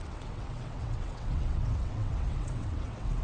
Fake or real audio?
fake